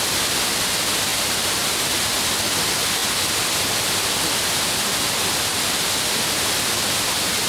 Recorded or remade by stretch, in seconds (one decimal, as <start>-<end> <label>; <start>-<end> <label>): 0.0-1.1 recorded; 1.1-2.2 remade; 2.2-7.5 recorded